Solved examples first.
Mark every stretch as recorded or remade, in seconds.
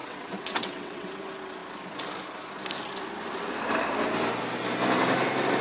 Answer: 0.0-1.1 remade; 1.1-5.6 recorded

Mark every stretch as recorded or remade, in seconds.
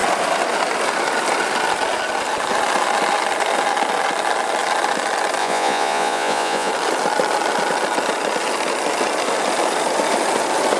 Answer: 0.0-5.4 recorded; 5.4-6.7 remade; 6.7-10.8 recorded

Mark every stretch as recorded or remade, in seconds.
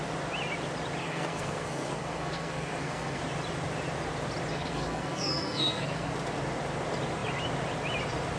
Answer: 0.0-1.0 recorded; 1.0-3.2 remade; 3.2-4.5 recorded; 4.5-6.1 remade; 6.1-8.4 recorded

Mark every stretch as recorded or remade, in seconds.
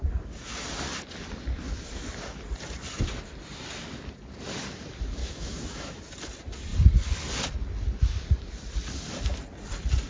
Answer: 0.0-5.2 recorded; 5.2-6.0 remade; 6.0-10.1 recorded